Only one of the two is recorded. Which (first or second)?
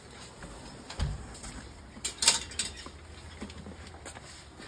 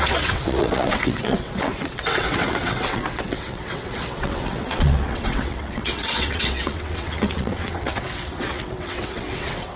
first